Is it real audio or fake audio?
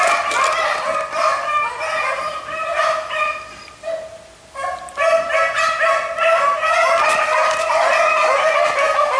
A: real